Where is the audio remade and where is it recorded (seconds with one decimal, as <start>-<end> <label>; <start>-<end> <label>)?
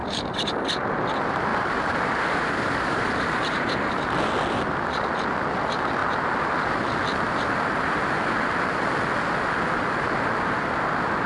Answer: 0.0-0.7 remade; 0.7-1.5 recorded; 1.5-3.7 remade; 3.7-11.3 recorded